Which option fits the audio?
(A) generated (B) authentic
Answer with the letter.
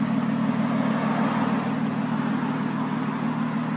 B